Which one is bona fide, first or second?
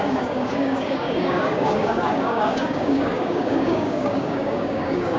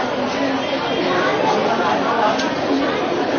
second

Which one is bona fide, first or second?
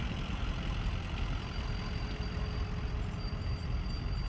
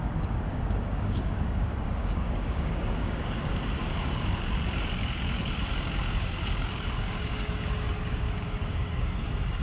first